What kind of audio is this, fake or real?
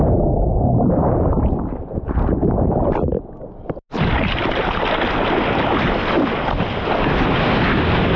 real